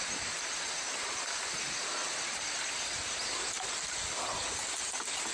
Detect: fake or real real